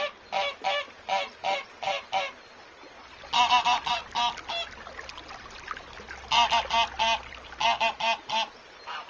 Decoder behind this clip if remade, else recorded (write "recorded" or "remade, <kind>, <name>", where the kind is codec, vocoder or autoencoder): recorded